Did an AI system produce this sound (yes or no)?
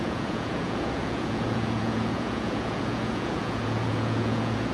yes